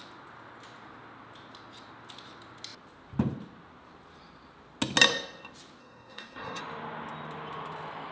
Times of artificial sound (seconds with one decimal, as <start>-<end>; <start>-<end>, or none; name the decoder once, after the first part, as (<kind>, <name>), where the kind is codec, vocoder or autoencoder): 5.8-6.6 (codec, SNAC)